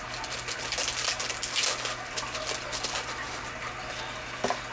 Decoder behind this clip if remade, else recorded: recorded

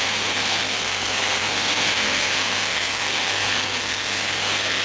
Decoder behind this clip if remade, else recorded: remade, codec, SNAC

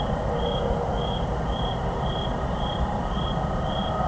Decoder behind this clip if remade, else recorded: recorded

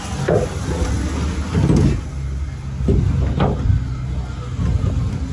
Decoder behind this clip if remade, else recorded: recorded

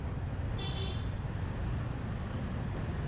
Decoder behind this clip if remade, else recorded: recorded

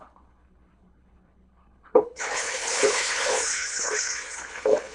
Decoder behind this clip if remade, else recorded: remade, codec, HILCodec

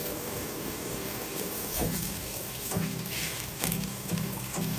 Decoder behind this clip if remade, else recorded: remade, codec, DAC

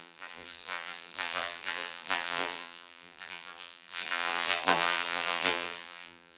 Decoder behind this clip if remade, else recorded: remade, vocoder, BigVGAN v2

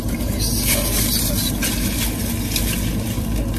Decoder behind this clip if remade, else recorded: recorded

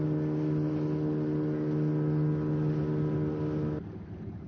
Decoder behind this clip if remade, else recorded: recorded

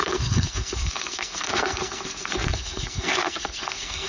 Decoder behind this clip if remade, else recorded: remade, codec, SNAC